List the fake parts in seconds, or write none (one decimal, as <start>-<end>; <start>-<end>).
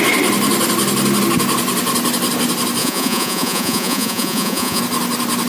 2.8-4.8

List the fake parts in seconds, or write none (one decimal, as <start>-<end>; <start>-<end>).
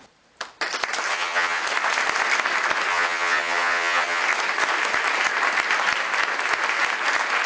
1.1-1.6; 2.9-4.2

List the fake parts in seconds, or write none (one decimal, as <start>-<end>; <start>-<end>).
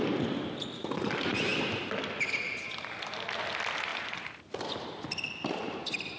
3.9-4.6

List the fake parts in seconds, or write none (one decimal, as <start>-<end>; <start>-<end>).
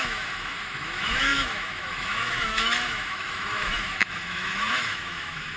0.0-5.6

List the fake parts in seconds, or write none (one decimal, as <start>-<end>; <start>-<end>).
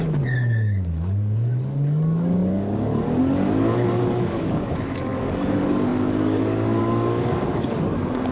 0.0-8.3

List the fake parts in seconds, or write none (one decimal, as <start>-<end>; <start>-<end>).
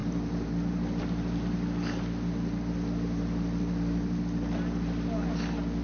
none